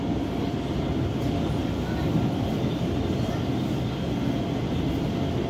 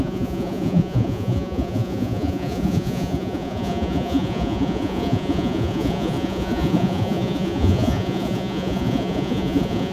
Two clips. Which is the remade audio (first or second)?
second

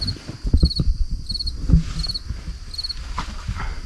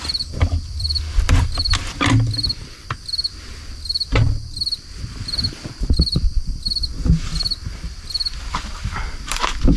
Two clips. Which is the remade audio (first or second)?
second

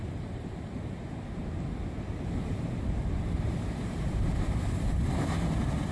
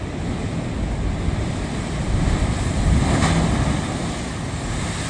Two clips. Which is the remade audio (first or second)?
first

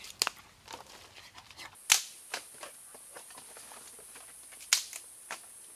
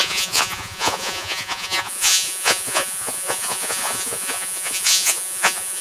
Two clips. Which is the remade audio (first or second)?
second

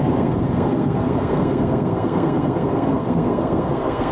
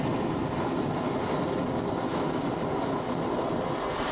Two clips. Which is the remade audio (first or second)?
first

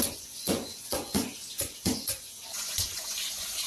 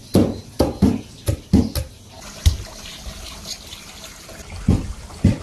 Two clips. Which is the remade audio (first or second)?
first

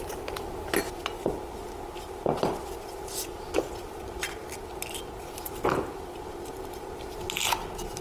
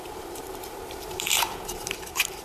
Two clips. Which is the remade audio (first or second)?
second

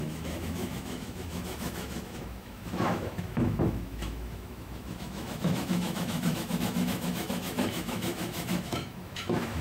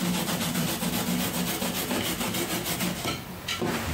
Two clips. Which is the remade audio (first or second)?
first